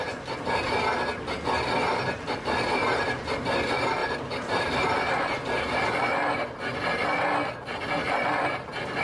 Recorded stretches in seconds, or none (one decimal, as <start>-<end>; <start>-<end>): 0.0-4.0; 4.8-9.0